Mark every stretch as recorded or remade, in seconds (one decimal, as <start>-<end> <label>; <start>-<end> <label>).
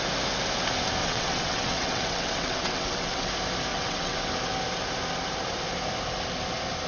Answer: 0.0-1.0 recorded; 1.0-3.3 remade; 3.3-3.7 recorded; 3.7-4.3 remade; 4.3-6.9 recorded